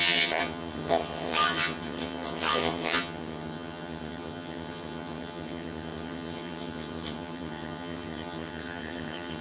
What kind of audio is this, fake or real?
fake